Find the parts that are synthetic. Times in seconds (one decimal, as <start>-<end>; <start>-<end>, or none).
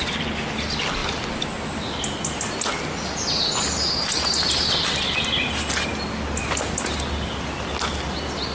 none